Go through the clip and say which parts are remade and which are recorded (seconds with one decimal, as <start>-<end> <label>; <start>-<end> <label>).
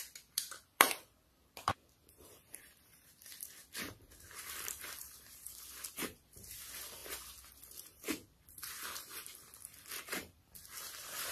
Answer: 0.0-7.0 remade; 7.0-7.7 recorded; 7.7-11.3 remade